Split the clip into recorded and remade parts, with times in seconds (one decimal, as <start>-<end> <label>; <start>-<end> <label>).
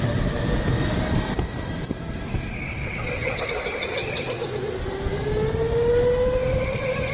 0.0-2.8 recorded; 2.8-3.4 remade; 3.4-7.1 recorded